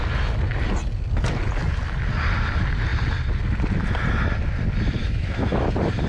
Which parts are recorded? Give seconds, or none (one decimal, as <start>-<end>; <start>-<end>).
0.0-5.0; 5.6-6.1